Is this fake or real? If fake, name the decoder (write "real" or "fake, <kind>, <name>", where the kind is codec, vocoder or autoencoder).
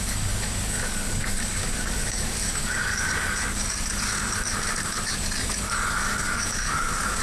fake, codec, DAC